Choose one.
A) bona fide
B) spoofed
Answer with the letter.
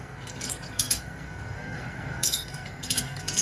B